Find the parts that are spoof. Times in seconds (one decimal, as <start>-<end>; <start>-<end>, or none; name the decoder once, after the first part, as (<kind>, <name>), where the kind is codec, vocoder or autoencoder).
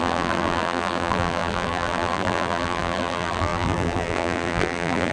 0.0-5.1 (vocoder, BigVGAN v2)